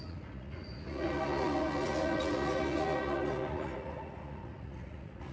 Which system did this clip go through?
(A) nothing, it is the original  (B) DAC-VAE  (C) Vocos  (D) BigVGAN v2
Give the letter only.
C